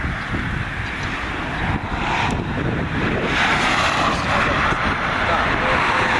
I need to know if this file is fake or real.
real